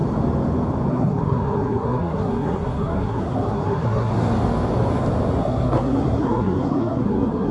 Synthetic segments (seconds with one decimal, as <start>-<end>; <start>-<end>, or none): 0.9-4.1; 5.4-7.5